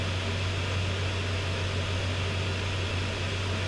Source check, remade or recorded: recorded